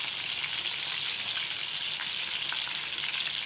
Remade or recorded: recorded